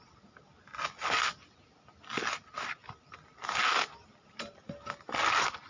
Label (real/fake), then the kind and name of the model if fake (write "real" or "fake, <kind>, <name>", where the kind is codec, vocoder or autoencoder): real